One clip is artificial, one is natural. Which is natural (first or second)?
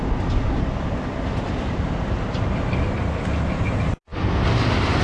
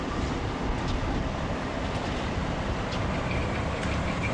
first